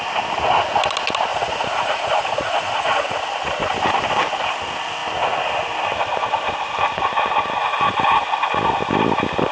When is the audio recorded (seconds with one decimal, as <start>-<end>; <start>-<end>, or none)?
0.0-1.3; 3.2-7.6; 8.2-9.5